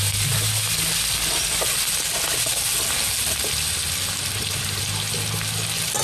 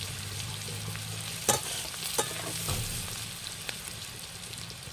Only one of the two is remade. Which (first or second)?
second